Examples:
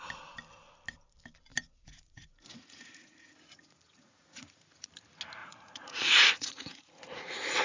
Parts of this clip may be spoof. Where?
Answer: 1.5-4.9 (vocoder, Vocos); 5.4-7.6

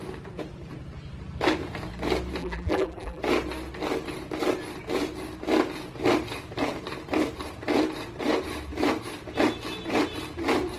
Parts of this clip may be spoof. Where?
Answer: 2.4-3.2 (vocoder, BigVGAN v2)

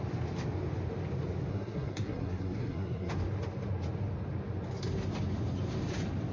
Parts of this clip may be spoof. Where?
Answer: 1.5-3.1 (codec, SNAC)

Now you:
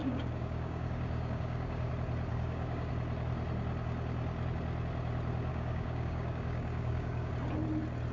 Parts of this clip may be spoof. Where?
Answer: 0.0-1.9 (codec, DAC); 2.3-2.9; 5.5-7.3

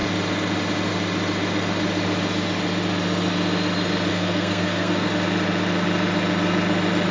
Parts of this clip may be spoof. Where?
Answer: 4.1-5.1 (codec, SNAC)

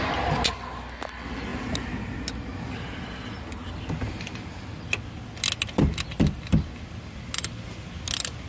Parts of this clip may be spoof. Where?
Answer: none

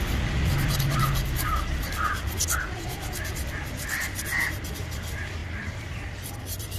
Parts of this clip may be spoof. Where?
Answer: none